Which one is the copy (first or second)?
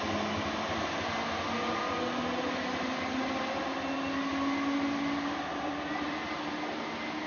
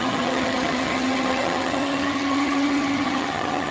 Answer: second